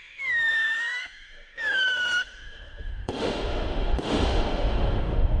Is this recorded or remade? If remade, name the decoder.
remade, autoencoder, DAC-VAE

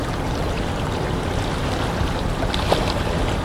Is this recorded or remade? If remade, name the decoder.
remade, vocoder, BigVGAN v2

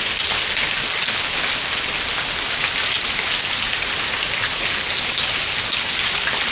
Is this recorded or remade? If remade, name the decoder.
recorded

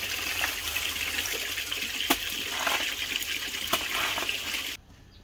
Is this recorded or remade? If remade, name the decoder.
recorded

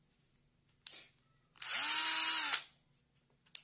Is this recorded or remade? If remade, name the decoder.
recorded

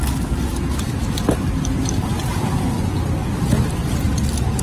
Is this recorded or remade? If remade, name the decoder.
recorded